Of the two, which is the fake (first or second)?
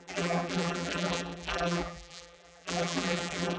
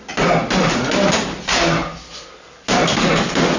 first